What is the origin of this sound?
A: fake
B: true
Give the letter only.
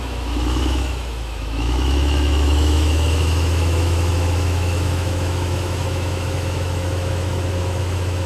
A